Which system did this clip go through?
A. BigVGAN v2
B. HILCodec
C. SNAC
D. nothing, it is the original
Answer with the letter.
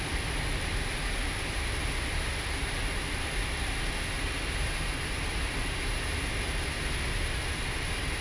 D